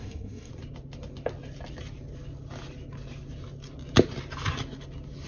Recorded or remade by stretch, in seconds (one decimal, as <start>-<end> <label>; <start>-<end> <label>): 0.0-0.5 remade; 0.5-5.3 recorded